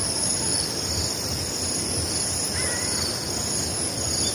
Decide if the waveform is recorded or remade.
recorded